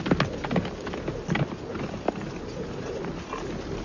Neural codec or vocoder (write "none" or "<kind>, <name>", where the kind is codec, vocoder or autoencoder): none